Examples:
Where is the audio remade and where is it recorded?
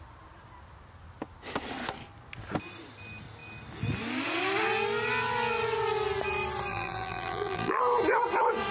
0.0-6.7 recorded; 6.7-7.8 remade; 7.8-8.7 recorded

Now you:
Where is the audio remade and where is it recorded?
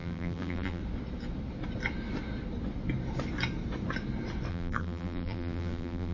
0.0-0.8 remade; 0.8-4.5 recorded; 4.5-6.1 remade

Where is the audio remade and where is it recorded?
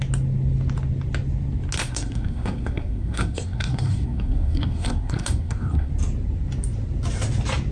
0.0-1.8 recorded; 1.8-5.9 remade; 5.9-7.7 recorded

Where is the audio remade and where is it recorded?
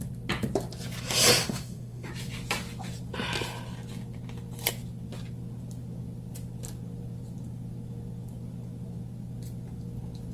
0.0-1.4 recorded; 1.4-2.1 remade; 2.1-10.3 recorded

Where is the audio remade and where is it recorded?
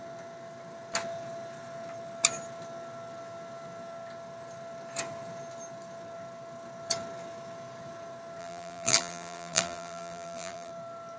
0.0-8.4 recorded; 8.4-10.7 remade; 10.7-11.2 recorded